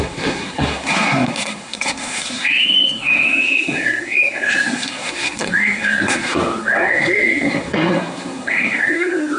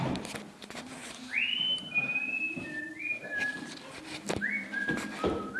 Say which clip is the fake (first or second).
first